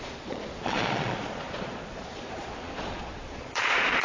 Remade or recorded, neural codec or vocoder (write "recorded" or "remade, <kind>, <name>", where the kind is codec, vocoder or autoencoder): remade, vocoder, Vocos